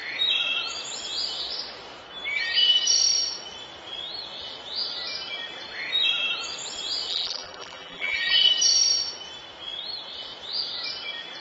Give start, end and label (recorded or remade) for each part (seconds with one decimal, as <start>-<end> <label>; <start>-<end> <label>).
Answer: 0.0-7.1 recorded; 7.1-8.5 remade; 8.5-11.4 recorded